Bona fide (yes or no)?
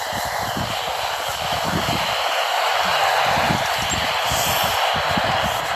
yes